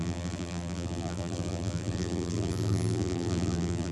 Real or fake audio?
fake